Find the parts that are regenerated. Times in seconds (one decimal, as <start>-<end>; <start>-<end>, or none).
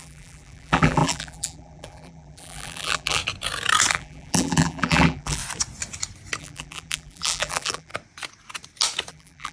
0.0-3.2; 3.9-5.4; 6.4-7.9; 9.1-9.5